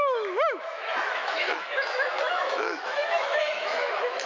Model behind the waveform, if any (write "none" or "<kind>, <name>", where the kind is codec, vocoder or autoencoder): autoencoder, DAC-VAE